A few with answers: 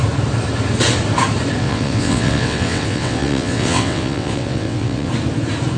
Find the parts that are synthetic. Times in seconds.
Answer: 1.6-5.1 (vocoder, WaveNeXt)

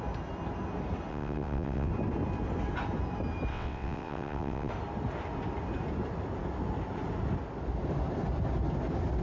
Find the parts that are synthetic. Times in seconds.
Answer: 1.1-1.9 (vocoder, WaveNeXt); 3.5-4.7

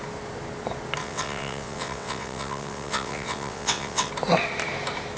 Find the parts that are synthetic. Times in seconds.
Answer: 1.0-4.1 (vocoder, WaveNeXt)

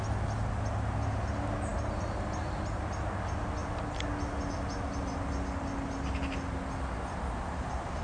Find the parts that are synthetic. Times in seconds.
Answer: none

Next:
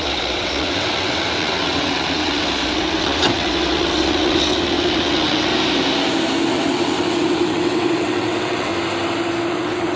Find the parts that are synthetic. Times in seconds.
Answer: 0.0-5.5 (vocoder, WaveNeXt); 6.5-8.7; 9.5-10.0